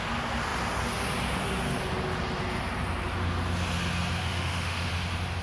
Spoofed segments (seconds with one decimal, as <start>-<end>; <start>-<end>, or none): 4.2-4.9